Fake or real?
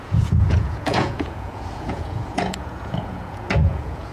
fake